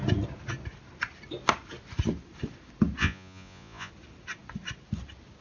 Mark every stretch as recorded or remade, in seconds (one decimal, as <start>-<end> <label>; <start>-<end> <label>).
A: 0.0-3.0 recorded; 3.0-3.9 remade; 3.9-5.4 recorded